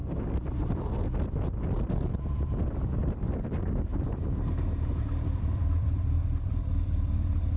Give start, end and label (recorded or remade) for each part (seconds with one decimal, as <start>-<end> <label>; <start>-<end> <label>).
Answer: 0.0-3.9 remade; 3.9-4.9 recorded; 4.9-7.6 remade